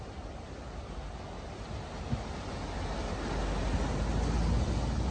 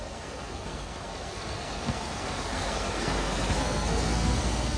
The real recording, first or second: first